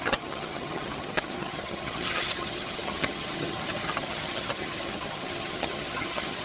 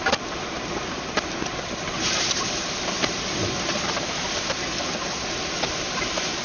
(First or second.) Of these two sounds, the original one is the second